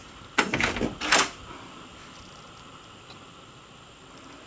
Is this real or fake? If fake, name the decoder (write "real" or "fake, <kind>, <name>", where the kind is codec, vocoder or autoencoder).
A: real